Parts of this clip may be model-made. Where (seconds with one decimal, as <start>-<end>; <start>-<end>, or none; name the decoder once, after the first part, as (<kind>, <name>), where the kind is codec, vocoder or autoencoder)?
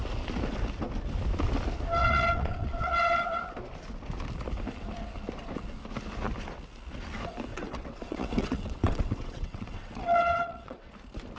2.0-3.2 (vocoder, WaveNeXt); 7.5-10.9